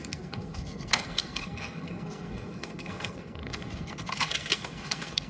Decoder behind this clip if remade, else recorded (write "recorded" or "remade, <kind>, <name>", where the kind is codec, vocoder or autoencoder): remade, codec, SNAC